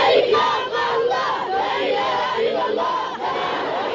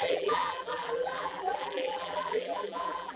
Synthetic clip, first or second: second